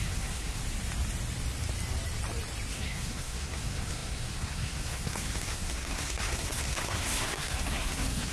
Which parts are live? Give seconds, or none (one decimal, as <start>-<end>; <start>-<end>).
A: 0.6-2.7